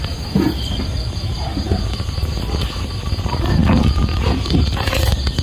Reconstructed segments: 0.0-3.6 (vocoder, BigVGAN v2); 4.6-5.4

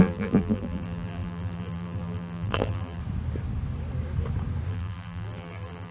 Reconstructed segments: 0.0-3.0 (vocoder, BigVGAN v2); 4.7-5.9

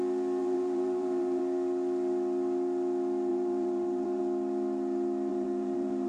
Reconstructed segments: 0.4-1.4 (vocoder, BigVGAN v2); 3.3-4.2; 5.3-6.1

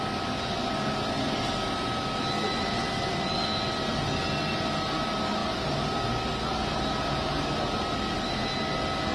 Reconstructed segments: none